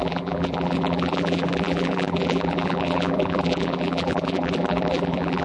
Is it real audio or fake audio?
fake